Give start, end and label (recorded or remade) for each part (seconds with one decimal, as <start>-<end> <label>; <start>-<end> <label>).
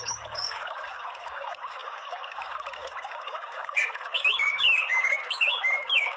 0.0-6.2 remade